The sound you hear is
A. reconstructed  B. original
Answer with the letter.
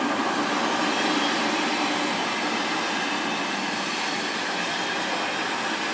B